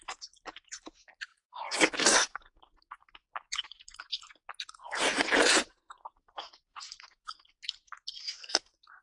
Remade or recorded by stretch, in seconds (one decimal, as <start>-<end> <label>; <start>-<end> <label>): 0.0-1.3 recorded; 1.3-2.6 remade; 2.6-9.0 recorded